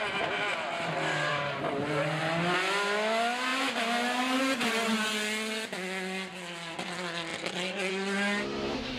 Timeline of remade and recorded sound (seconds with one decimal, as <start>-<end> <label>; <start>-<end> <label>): 0.0-9.0 recorded